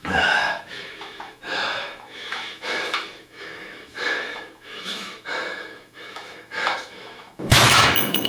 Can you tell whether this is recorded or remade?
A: remade